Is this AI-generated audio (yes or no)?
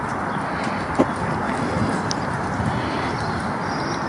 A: no